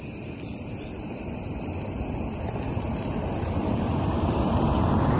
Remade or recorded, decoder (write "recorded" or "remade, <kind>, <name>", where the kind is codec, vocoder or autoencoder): remade, vocoder, BigVGAN v2